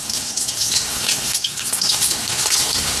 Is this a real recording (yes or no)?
no